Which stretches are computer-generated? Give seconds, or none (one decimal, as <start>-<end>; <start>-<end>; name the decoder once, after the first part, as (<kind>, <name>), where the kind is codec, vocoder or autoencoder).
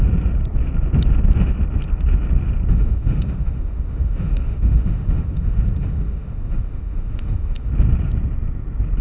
2.7-7.7 (autoencoder, DAC-VAE)